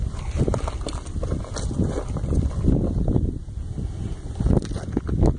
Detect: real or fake real